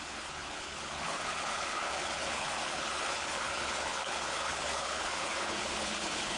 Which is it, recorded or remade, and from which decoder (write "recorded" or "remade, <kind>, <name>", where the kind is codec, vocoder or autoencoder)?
remade, codec, HILCodec